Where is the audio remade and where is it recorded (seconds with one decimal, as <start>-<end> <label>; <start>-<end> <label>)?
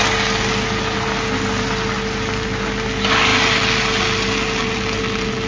0.0-5.5 recorded